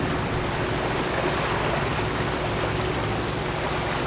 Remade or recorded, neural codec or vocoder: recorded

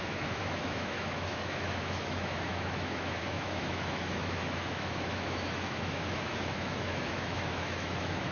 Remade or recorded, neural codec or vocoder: remade, autoencoder, DAC-VAE